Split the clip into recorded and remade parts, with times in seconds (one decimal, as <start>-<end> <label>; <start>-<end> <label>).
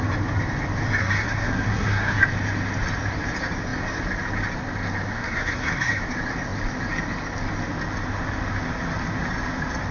0.0-1.0 recorded; 1.0-2.2 remade; 2.2-5.1 recorded; 5.1-6.0 remade; 6.0-9.9 recorded